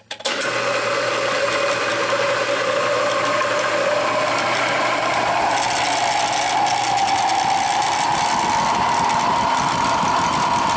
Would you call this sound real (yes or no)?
yes